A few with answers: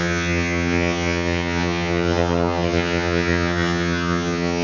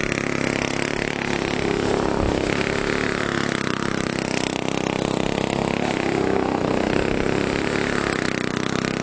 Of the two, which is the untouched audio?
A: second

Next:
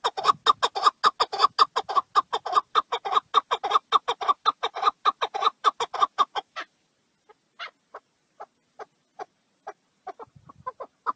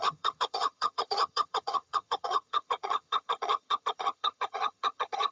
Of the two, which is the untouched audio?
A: first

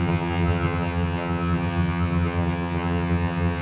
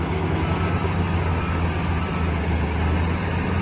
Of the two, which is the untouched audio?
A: second